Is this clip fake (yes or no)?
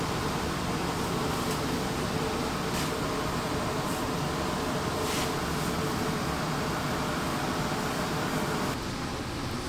no